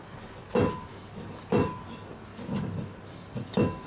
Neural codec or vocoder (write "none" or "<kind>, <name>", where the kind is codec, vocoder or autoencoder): none